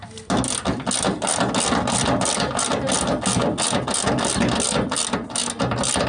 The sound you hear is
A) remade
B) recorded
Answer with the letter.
B